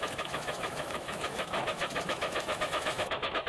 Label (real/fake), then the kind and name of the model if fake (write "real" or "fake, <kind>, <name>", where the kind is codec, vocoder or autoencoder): fake, autoencoder, DAC-VAE